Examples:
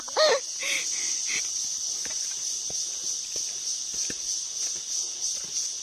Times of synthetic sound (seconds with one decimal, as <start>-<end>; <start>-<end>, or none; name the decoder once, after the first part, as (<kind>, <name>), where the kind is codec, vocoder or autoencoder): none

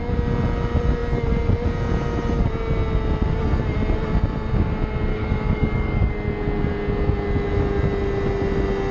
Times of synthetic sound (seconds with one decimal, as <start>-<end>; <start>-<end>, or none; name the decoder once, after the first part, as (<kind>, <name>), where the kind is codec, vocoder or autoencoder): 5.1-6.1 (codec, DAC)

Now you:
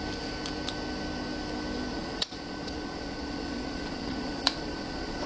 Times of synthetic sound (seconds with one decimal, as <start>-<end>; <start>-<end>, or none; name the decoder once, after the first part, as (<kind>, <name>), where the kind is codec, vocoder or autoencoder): 1.9-5.3 (vocoder, Vocos)

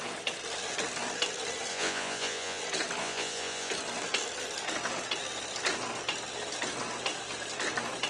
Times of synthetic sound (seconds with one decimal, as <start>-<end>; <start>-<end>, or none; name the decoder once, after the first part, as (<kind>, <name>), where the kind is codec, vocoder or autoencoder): 1.7-2.6 (vocoder, Vocos); 3.0-3.7